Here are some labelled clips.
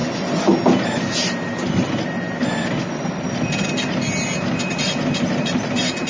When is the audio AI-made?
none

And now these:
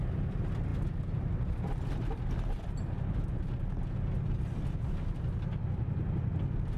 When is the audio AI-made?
none

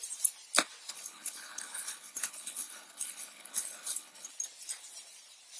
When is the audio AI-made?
0.9-4.3 (codec, HILCodec)

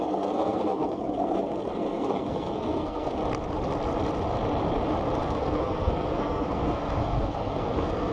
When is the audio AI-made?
0.0-3.2 (codec, SNAC); 5.2-8.1

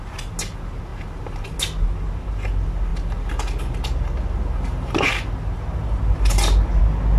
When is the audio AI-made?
none